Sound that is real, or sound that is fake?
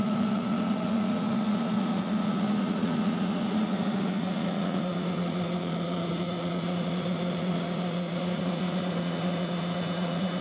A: fake